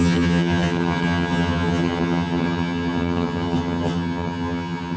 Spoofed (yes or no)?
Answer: yes